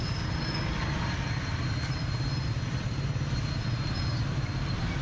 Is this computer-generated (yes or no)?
no